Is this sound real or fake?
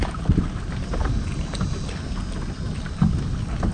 real